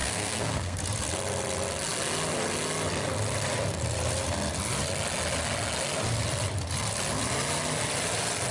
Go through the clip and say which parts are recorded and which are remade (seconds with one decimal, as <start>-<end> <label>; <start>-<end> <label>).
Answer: 0.0-0.8 remade; 0.8-8.5 recorded